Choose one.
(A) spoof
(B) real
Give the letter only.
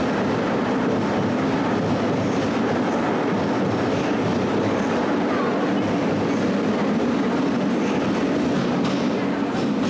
B